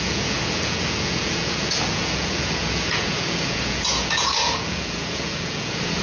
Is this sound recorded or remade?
remade